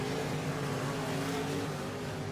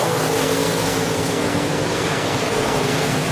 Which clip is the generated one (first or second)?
second